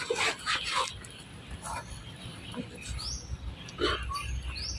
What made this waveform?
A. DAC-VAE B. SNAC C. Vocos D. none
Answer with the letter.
D